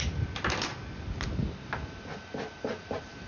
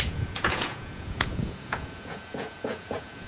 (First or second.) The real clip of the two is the first